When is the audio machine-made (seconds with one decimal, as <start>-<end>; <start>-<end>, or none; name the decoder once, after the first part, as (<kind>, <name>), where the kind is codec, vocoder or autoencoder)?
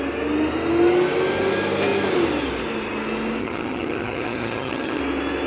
3.4-5.0 (vocoder, HiFi-GAN)